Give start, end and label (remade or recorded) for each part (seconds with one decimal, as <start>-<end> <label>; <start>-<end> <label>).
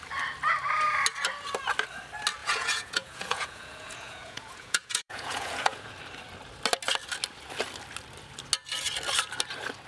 0.0-2.4 recorded; 2.4-5.9 remade; 5.9-9.9 recorded